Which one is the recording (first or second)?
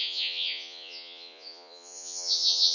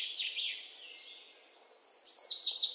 second